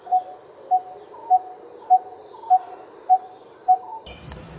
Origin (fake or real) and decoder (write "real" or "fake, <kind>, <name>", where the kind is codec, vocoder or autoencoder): real